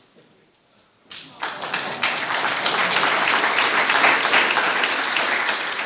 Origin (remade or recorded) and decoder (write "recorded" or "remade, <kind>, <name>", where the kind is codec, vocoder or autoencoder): remade, vocoder, BigVGAN v2